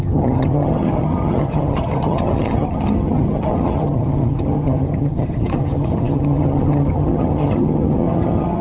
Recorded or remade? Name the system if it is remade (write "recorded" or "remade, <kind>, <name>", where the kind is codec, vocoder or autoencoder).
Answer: remade, vocoder, HiFi-GAN